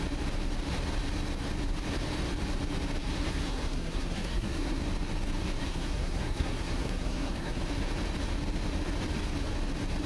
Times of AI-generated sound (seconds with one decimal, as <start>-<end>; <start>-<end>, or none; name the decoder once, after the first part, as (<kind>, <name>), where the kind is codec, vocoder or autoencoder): 3.0-4.8 (codec, SNAC); 5.6-7.6